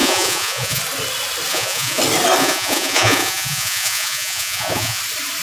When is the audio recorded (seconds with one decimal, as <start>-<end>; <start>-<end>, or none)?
0.8-1.5; 2.0-2.4; 5.0-5.4